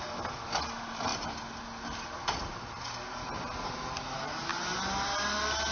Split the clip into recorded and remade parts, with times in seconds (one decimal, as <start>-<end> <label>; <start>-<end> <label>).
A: 0.0-5.7 recorded